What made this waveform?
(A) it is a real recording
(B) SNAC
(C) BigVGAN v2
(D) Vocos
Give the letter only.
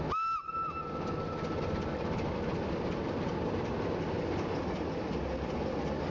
A